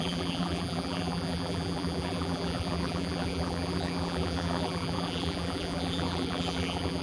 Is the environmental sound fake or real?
fake